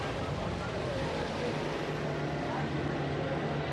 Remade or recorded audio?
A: recorded